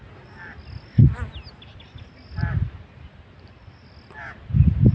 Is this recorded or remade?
recorded